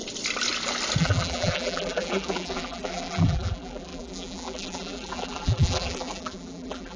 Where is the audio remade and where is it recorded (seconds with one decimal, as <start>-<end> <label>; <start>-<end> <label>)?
0.0-1.0 recorded; 1.0-7.0 remade